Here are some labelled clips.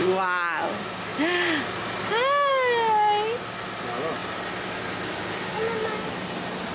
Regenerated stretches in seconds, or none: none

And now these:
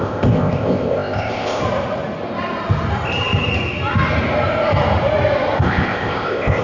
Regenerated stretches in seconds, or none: 0.0-1.6 (codec, ZipCodec); 5.6-6.6